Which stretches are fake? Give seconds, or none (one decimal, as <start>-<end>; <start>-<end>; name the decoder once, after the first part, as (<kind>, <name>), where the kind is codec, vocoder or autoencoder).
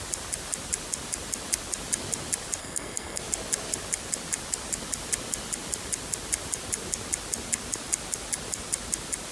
2.6-3.2 (codec, SNAC)